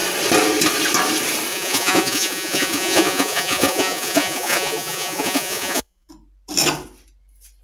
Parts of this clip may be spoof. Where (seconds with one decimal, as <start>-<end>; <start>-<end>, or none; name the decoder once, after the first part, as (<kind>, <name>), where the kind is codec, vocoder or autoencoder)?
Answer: 1.5-6.1 (vocoder, Vocos)